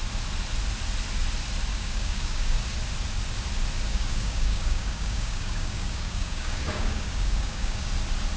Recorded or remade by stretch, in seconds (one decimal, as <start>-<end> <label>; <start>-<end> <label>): 0.0-1.7 recorded; 1.7-2.6 remade; 2.6-3.9 recorded; 3.9-7.9 remade; 7.9-8.4 recorded